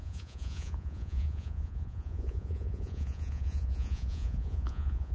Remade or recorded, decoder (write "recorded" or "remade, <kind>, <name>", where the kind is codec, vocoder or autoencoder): remade, vocoder, Vocos